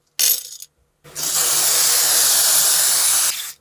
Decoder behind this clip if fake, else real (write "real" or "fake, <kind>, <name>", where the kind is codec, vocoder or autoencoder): real